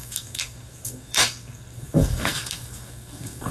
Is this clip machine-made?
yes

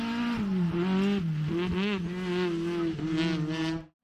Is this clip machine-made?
no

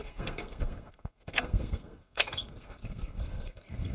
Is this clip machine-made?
yes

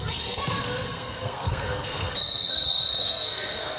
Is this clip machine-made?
yes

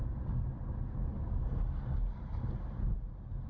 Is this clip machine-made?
no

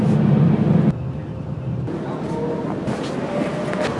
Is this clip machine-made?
no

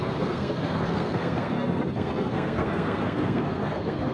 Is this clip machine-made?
yes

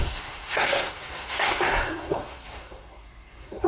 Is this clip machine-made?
yes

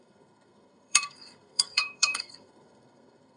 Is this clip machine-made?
yes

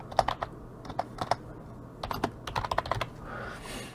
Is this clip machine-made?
no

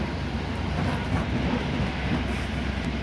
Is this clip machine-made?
no